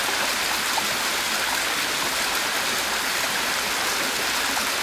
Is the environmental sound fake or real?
real